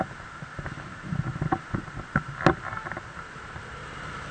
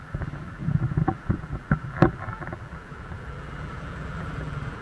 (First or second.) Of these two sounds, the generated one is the second